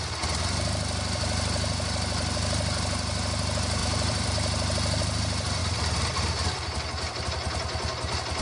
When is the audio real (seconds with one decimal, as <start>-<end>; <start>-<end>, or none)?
0.0-3.8; 4.3-5.6; 7.2-8.4